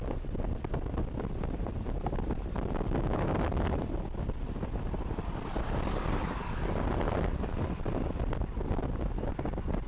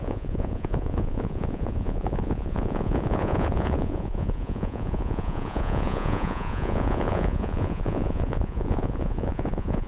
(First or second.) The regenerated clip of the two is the second